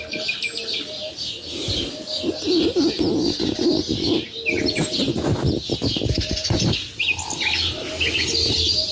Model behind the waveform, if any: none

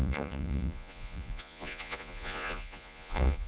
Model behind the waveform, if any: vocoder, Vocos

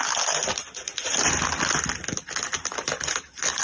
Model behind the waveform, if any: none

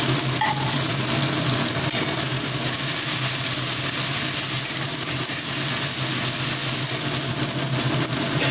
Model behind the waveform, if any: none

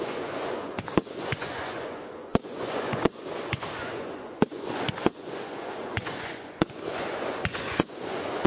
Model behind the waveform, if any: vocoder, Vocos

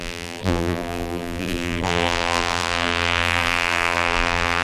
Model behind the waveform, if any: vocoder, BigVGAN v2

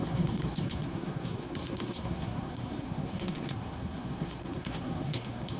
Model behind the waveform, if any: codec, SNAC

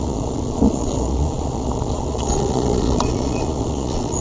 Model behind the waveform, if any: vocoder, Vocos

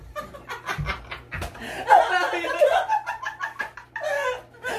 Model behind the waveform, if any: none